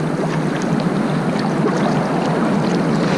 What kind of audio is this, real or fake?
real